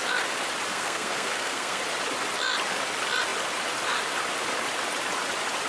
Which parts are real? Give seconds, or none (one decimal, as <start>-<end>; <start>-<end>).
0.0-0.7; 1.8-5.7